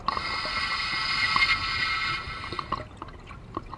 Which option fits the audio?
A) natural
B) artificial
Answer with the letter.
A